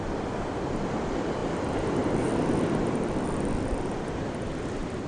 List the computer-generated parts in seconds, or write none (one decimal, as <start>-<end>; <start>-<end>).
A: 1.4-4.5